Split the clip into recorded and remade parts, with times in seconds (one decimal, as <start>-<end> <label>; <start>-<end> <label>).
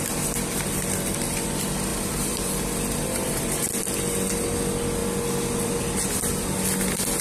0.0-1.9 recorded; 1.9-3.8 remade; 3.8-7.2 recorded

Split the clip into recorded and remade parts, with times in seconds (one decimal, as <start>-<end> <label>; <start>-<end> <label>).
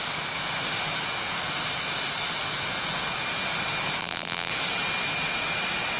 0.0-4.0 recorded; 4.0-4.5 remade; 4.5-6.0 recorded